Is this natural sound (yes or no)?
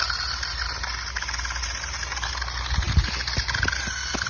yes